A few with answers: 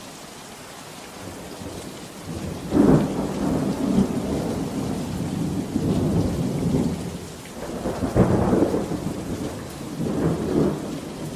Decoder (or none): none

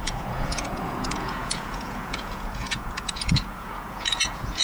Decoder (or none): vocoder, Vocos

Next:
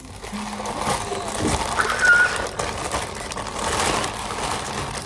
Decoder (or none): none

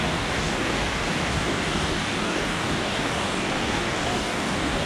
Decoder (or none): codec, DAC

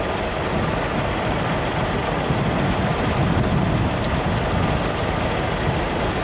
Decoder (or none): none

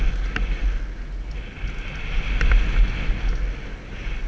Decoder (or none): none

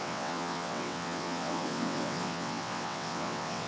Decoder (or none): vocoder, WaveNeXt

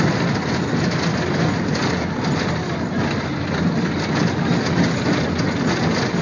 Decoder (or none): none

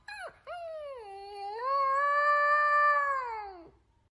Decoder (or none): none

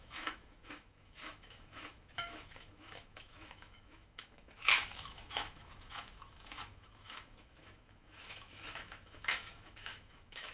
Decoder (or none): autoencoder, DAC-VAE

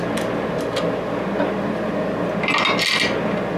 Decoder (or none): none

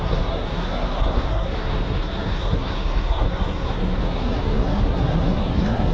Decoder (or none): codec, SNAC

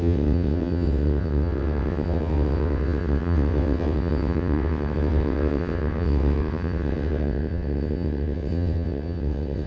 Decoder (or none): vocoder, WaveNeXt